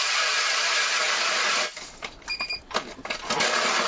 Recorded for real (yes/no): yes